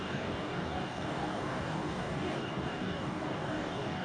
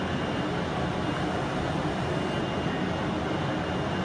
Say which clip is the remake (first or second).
first